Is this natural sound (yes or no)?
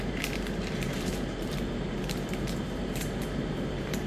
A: no